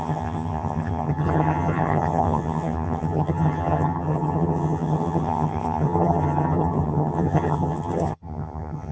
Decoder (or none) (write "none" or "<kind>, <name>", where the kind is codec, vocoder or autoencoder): vocoder, HiFi-GAN